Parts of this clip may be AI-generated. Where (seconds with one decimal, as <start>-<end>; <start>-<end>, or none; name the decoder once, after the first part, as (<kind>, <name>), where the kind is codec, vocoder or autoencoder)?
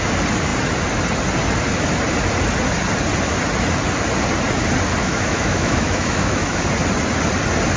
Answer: 5.0-6.6 (autoencoder, DAC-VAE)